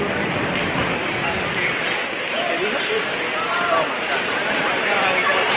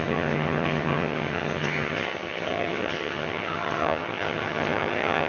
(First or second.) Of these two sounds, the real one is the first